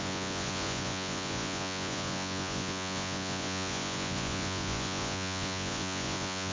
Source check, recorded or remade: remade